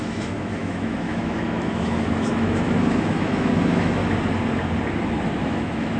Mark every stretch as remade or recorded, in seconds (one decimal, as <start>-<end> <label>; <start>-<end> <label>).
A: 0.0-4.0 remade; 4.0-5.4 recorded; 5.4-6.0 remade